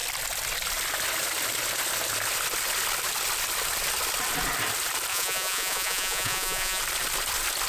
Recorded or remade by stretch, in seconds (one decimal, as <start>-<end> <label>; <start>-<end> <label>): 0.0-5.1 recorded; 5.1-6.8 remade; 6.8-7.7 recorded